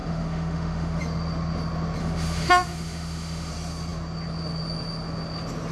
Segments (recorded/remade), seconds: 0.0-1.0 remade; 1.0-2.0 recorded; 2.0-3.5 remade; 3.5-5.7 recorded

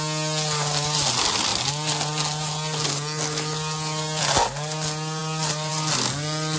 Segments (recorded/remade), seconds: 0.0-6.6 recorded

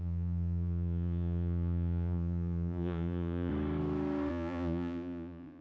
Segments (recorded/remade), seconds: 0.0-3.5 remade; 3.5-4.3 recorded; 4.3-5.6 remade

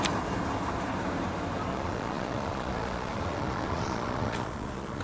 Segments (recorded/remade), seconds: 0.0-1.7 recorded; 1.7-5.0 remade